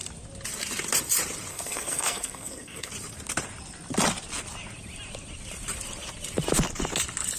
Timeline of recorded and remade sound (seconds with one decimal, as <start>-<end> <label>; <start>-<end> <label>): 0.0-1.5 recorded; 1.5-2.9 remade; 2.9-7.4 recorded